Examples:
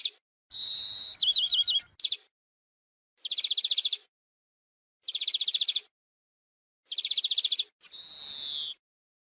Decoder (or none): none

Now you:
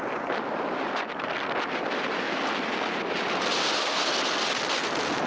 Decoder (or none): none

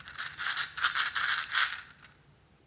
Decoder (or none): none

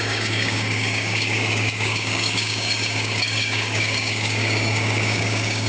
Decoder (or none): codec, DAC